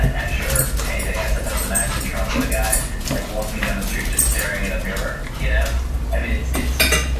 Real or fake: real